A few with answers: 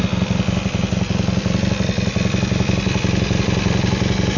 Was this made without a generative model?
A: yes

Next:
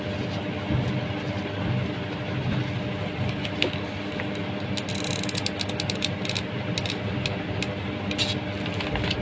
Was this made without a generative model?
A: yes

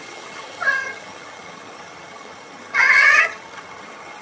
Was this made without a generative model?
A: no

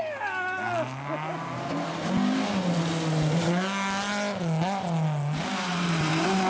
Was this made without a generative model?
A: yes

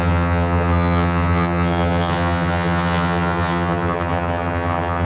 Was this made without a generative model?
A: no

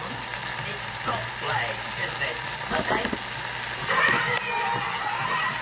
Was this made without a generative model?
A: yes